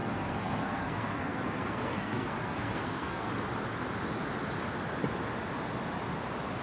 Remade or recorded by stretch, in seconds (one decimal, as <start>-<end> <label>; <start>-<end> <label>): 0.0-3.3 remade; 3.3-6.6 recorded